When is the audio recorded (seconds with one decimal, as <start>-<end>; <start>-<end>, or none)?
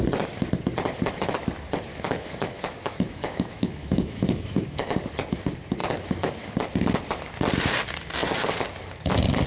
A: 0.0-1.9; 5.0-9.5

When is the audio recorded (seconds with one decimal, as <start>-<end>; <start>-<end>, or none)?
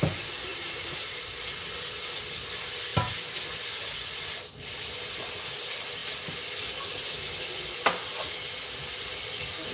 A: 0.0-0.5; 1.4-9.7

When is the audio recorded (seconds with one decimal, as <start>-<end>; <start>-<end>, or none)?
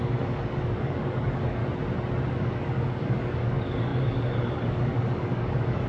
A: 1.6-2.3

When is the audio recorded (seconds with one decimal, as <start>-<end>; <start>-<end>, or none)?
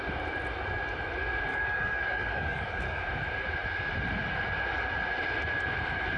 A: 0.0-1.5; 3.0-6.2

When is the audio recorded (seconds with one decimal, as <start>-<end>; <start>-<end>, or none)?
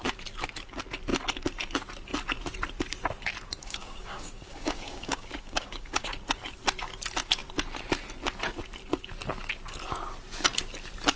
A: 0.0-3.6; 6.1-11.2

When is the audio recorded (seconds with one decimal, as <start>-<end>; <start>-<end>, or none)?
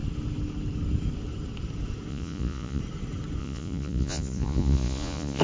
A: 0.0-2.1; 2.8-3.4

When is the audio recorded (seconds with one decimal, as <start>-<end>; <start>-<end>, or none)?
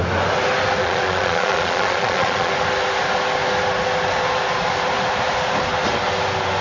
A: 0.0-0.8; 2.5-6.6